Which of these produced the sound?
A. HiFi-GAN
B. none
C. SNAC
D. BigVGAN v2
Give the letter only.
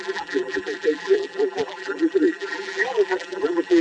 D